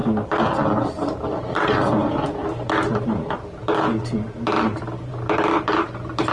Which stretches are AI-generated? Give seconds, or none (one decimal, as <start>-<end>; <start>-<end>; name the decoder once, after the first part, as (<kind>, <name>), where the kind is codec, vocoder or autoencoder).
2.4-3.6 (vocoder, BigVGAN v2); 4.7-6.3